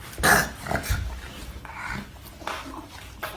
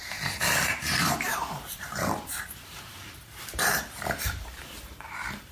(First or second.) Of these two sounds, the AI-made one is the second